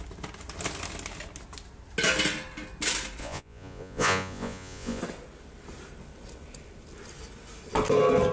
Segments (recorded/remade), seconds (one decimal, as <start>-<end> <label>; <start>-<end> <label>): 0.0-3.2 recorded; 3.2-5.0 remade; 5.0-8.3 recorded